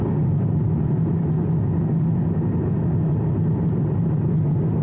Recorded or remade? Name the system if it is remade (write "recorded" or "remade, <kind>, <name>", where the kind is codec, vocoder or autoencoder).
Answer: recorded